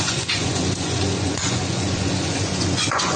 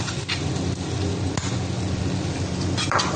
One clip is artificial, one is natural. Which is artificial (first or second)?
first